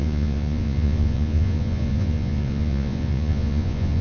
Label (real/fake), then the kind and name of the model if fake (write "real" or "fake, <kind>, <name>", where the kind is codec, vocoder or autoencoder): fake, vocoder, Vocos